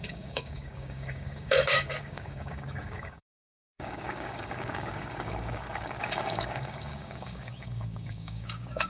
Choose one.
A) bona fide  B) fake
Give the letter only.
B